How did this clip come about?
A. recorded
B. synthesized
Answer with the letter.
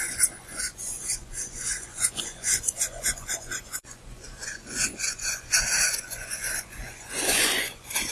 B